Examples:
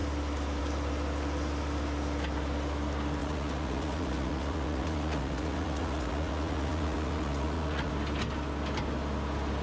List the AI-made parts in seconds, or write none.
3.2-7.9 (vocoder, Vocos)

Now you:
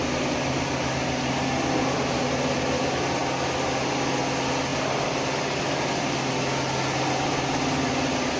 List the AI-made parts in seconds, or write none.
none

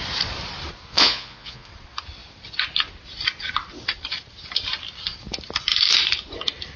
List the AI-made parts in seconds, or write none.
0.9-1.7 (vocoder, Vocos)

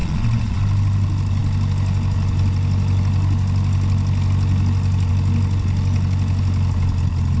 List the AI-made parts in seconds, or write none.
0.0-0.6 (vocoder, Vocos)

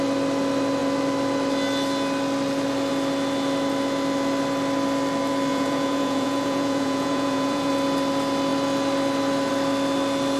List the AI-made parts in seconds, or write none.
5.5-7.7 (vocoder, Vocos)

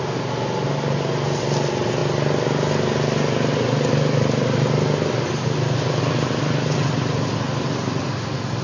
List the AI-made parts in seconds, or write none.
none